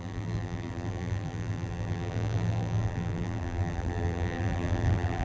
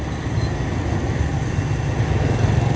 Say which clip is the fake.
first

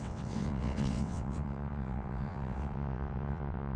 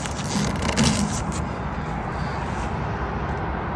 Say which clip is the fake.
first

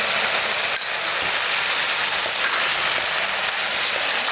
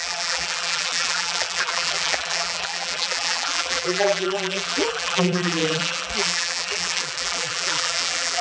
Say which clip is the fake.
second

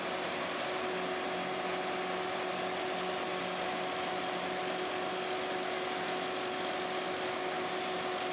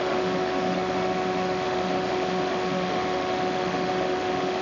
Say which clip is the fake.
second